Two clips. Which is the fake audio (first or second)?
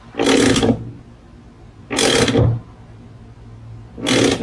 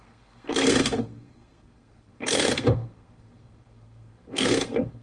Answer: second